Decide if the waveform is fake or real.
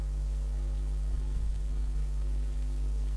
fake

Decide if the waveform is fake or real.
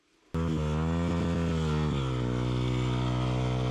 real